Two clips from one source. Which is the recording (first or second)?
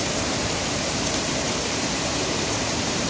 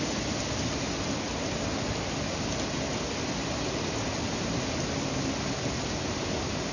second